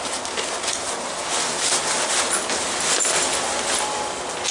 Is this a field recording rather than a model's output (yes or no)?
yes